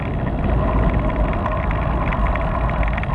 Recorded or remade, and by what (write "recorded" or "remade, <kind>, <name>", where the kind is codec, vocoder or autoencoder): recorded